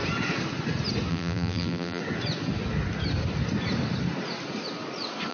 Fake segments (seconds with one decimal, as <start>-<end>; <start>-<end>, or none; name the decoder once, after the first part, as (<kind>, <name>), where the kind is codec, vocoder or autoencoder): 1.1-2.0 (vocoder, BigVGAN v2)